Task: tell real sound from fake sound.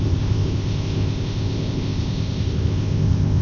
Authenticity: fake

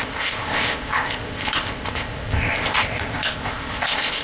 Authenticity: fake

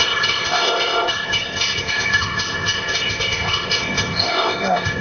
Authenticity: fake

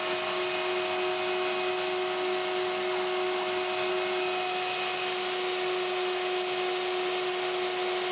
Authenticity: real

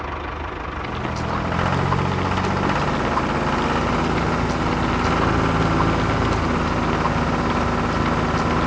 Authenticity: real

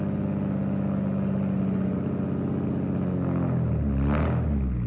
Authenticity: real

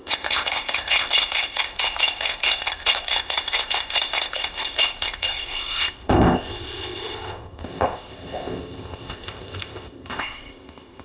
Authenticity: fake